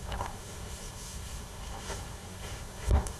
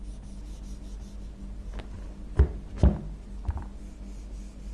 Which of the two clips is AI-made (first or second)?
first